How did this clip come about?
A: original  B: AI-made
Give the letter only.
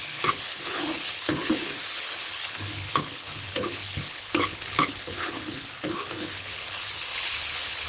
B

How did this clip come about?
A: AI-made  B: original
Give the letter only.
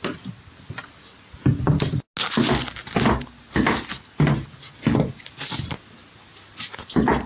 B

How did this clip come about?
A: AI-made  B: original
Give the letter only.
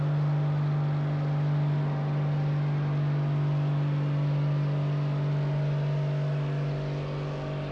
B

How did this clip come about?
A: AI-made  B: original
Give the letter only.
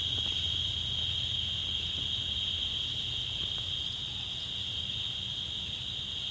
B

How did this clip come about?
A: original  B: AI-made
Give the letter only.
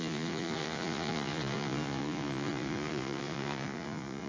B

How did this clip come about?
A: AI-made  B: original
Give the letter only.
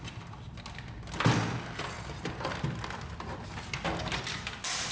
B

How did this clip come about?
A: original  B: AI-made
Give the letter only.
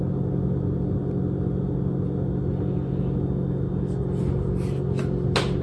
A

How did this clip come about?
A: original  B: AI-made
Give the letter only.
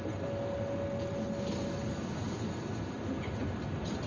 A